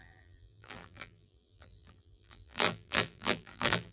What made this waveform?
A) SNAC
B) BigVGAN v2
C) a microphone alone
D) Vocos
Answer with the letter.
B